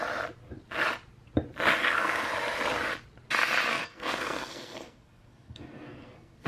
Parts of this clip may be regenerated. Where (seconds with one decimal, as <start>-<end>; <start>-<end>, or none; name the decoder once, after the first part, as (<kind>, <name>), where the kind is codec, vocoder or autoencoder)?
1.8-2.3 (codec, SNAC); 3.7-6.5

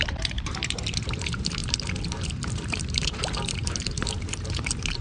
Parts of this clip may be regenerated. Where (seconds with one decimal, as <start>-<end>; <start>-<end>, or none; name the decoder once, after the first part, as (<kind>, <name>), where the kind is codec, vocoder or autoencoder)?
0.0-5.0 (vocoder, BigVGAN v2)

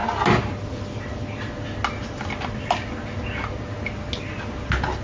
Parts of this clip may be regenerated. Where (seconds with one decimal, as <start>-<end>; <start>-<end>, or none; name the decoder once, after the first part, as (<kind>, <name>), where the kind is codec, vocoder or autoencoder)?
none

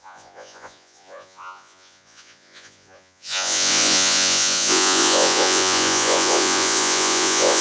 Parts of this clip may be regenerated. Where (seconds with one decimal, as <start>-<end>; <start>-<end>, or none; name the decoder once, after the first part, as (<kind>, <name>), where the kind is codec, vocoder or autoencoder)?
0.0-7.6 (vocoder, Vocos)